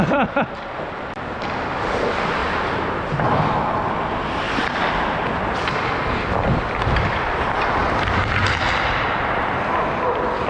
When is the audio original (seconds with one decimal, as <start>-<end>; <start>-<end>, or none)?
2.4-5.6